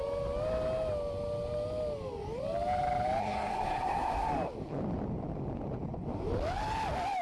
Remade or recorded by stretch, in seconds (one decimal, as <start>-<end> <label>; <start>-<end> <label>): 0.0-3.2 recorded; 3.2-4.3 remade; 4.3-7.2 recorded